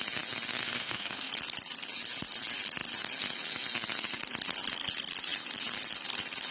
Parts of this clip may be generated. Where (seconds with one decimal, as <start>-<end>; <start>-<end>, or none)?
0.6-1.3